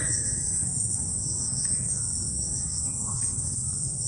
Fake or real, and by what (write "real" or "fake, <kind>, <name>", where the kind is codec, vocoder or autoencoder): fake, codec, SNAC